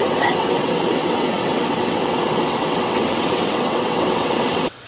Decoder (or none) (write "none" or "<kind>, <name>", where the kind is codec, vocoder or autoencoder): vocoder, WaveNeXt